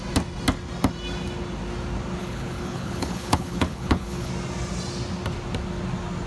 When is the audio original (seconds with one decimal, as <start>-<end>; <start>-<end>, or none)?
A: 0.0-2.2; 4.3-6.3